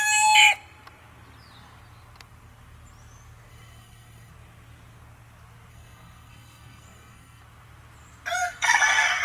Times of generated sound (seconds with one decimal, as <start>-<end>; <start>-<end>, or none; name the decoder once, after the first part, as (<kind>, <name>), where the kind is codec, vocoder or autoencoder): 3.5-4.3 (codec, SNAC); 5.7-7.4; 8.4-9.2